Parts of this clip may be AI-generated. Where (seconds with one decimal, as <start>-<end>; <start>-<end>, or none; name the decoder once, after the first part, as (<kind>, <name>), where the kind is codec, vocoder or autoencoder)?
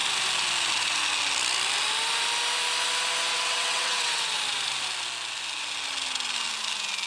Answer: 3.3-4.3 (vocoder, WaveNeXt)